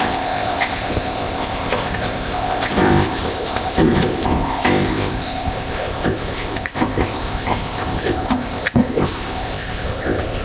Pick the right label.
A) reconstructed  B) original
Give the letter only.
A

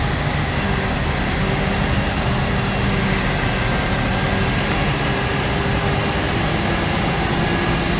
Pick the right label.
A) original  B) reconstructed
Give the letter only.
A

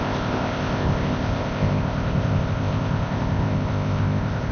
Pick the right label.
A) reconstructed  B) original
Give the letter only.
A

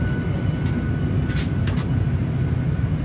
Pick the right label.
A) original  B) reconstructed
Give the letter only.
A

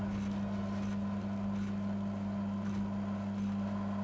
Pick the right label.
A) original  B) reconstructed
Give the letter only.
A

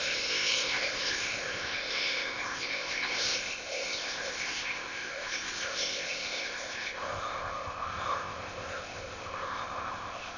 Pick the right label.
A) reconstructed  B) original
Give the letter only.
A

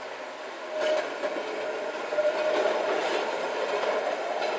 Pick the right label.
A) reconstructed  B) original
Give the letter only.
B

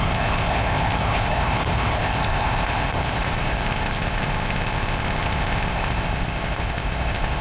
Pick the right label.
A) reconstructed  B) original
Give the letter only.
A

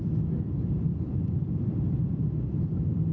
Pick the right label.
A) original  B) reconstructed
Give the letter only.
A